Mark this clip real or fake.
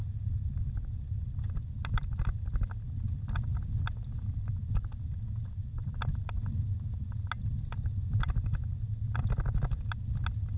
real